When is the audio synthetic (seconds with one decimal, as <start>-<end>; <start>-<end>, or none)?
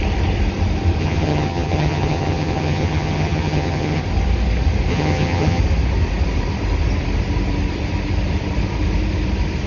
1.0-4.0; 4.9-5.6